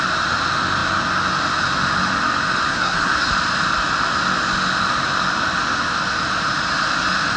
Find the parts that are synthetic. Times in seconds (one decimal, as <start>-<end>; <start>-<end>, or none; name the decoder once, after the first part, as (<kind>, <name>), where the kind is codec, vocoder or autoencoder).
2.7-3.3 (codec, SNAC)